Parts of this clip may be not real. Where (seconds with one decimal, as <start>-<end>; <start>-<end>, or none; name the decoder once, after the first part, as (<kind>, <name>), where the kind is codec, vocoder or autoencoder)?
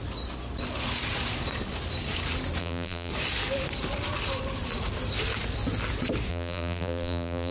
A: 2.6-3.1 (vocoder, BigVGAN v2); 6.3-7.5